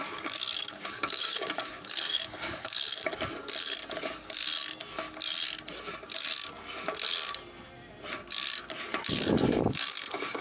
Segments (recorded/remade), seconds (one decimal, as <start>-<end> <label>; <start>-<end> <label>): 0.0-3.1 remade; 3.1-3.9 recorded; 3.9-4.4 remade; 4.4-9.1 recorded; 9.1-10.4 remade